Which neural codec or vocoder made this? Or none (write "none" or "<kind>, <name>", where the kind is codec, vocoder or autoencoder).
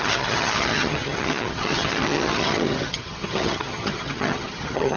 vocoder, HiFi-GAN